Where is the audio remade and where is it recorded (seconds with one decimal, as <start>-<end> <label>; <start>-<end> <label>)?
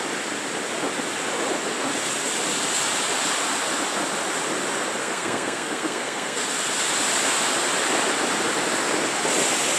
0.0-5.0 recorded; 5.0-6.4 remade; 6.4-9.8 recorded